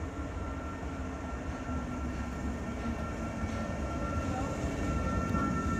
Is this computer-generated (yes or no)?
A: no